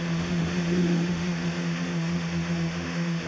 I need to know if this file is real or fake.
fake